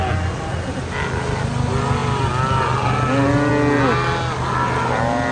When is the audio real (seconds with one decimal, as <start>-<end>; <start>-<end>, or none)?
0.0-5.3